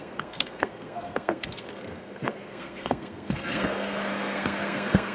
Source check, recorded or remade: remade